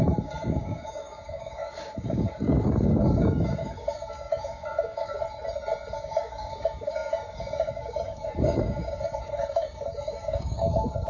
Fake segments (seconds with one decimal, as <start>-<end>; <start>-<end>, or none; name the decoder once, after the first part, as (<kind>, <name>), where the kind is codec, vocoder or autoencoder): 0.0-5.1 (codec, DAC); 5.9-11.1